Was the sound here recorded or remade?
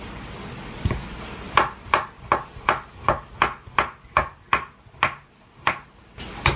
recorded